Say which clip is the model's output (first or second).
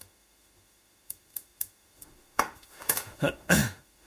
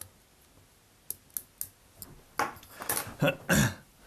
first